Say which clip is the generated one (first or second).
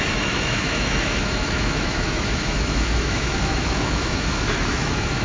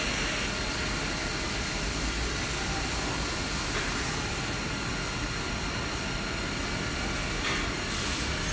first